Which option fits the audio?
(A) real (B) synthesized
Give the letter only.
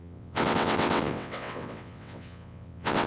B